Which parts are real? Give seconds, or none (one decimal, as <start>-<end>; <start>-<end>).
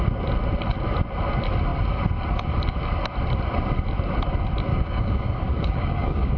0.0-4.7